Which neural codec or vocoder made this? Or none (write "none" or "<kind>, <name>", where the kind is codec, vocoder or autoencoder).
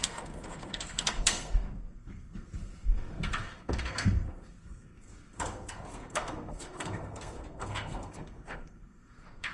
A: codec, SNAC